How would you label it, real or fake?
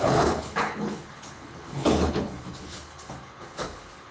fake